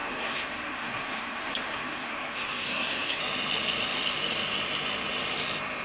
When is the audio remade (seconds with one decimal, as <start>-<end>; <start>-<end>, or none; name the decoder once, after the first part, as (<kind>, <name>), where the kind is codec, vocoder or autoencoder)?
0.0-3.2 (codec, SNAC)